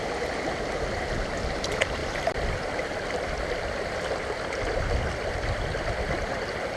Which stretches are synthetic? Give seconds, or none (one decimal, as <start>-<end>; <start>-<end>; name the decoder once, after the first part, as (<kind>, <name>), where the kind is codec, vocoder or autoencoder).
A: 2.0-6.1 (vocoder, BigVGAN v2)